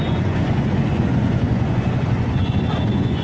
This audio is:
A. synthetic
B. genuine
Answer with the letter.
A